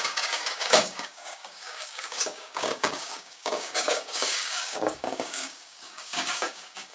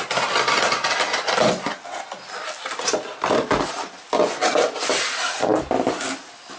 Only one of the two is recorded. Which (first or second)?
second